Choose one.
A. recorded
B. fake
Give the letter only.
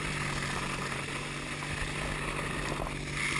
A